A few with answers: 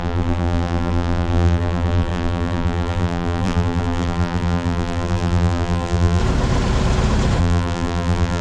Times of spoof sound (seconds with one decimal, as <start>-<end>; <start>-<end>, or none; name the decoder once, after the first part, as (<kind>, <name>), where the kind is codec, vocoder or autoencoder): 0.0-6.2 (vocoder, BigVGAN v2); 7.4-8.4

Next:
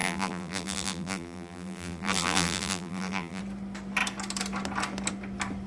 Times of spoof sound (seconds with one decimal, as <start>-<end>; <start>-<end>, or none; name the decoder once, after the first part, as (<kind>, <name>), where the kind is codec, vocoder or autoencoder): 0.0-3.4 (vocoder, BigVGAN v2)

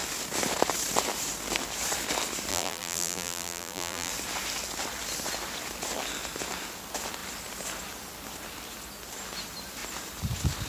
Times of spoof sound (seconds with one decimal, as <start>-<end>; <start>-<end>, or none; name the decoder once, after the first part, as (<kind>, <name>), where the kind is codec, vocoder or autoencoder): 2.5-4.1 (vocoder, BigVGAN v2)